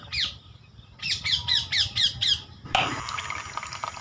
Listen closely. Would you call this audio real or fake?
real